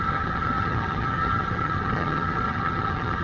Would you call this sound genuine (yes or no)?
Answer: no